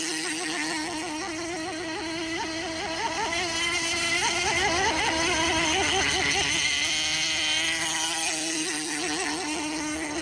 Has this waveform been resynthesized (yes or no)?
no